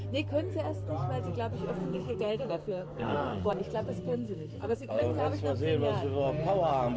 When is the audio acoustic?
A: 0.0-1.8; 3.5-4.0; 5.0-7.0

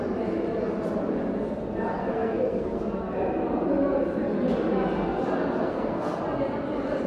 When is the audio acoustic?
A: 0.0-2.0; 2.8-5.6; 6.2-7.1